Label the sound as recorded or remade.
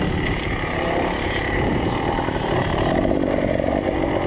recorded